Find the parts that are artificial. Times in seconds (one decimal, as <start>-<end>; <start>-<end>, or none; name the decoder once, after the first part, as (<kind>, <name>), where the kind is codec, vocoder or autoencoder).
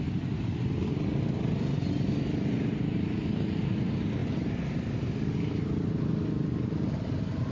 none